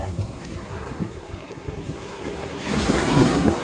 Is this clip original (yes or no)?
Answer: no